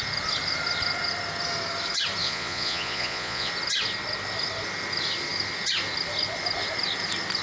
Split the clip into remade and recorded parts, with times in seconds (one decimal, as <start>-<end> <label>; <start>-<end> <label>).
0.0-2.2 recorded; 2.2-3.5 remade; 3.5-7.4 recorded